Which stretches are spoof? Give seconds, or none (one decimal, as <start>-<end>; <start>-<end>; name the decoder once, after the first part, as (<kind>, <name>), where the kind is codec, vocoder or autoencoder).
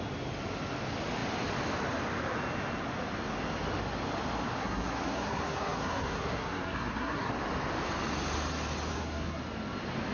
4.6-7.3 (codec, SNAC); 8.9-9.4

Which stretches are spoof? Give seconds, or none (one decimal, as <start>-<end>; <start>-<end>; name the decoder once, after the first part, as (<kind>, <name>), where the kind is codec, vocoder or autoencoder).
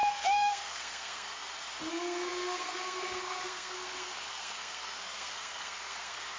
0.0-1.4 (codec, SNAC); 1.9-6.4